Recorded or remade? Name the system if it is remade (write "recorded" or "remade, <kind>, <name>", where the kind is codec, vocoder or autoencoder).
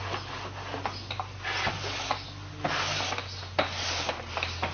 recorded